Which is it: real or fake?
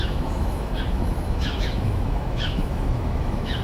fake